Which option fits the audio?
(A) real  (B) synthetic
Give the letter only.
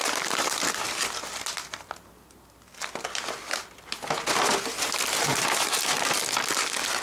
A